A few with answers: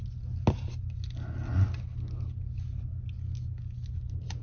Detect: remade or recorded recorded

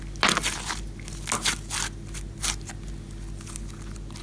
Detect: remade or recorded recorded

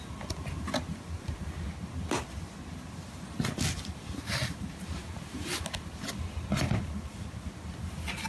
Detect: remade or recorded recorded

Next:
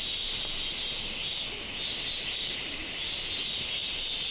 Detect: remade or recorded recorded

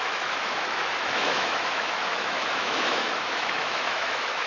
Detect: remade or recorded remade